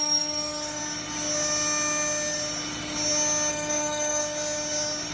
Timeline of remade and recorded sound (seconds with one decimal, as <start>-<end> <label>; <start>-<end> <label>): 0.0-0.8 remade; 0.8-3.5 recorded; 3.5-4.2 remade; 4.2-5.1 recorded